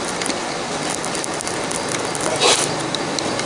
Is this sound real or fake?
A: real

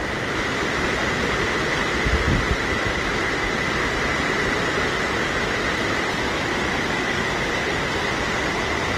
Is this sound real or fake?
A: real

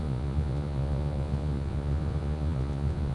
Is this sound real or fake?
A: fake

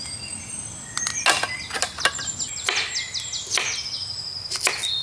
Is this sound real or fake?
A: real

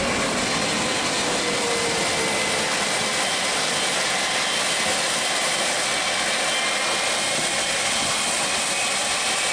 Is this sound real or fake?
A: real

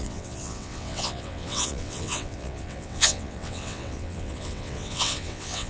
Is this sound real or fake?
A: fake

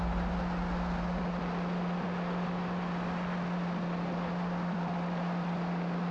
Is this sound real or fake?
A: real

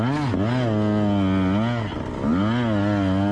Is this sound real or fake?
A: real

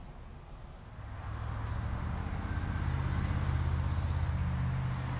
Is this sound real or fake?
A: real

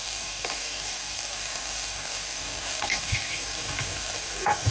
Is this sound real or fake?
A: fake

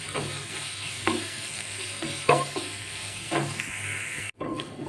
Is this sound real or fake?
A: fake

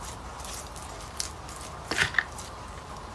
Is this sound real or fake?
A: real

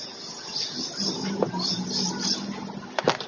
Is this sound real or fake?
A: real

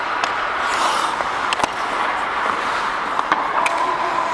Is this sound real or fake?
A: real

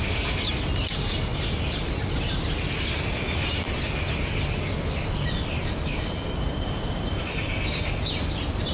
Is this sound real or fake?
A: real